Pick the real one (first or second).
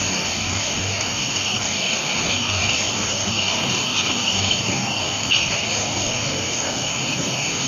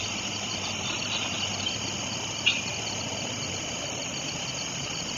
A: second